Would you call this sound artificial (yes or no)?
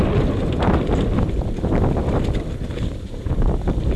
no